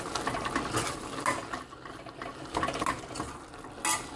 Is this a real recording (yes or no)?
yes